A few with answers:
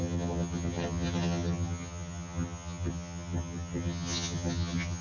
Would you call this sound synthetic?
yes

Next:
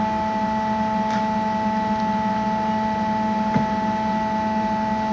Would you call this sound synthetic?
no